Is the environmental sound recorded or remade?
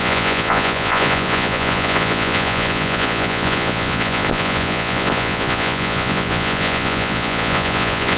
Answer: remade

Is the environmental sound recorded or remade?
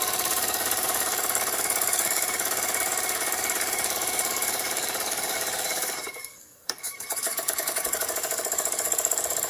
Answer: remade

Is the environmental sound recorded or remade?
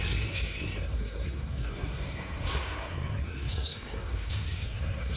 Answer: remade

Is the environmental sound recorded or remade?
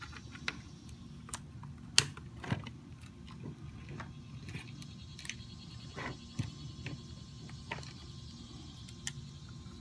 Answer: recorded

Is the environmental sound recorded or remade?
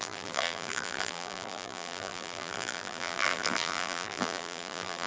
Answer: remade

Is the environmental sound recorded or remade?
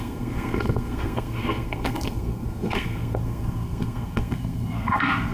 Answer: remade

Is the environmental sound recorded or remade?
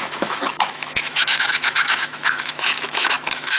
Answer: remade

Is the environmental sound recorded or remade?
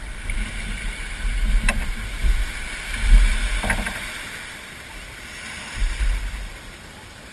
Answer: recorded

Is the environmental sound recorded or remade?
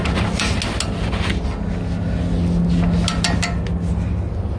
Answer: recorded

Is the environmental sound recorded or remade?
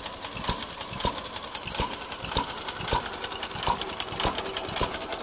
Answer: recorded